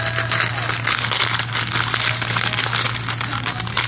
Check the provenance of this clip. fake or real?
real